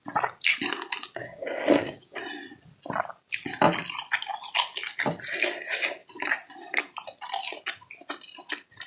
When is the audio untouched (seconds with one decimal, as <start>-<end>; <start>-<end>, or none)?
0.0-1.2; 2.2-8.9

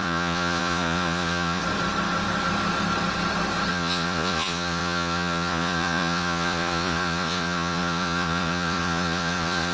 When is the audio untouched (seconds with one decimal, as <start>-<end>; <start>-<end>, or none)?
1.6-3.7

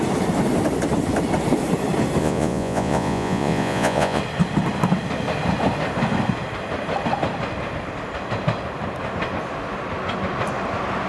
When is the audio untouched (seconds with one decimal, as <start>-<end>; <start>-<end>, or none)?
0.0-2.2; 4.2-11.1

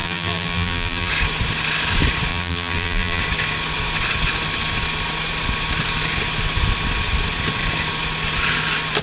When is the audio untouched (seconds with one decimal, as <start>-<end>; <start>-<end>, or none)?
1.1-2.3; 3.2-9.0